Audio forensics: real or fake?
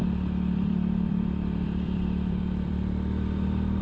fake